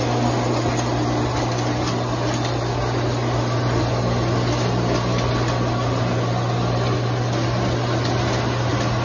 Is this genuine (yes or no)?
yes